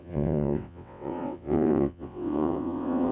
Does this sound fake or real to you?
fake